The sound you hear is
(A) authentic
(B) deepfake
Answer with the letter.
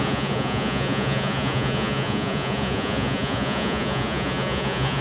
B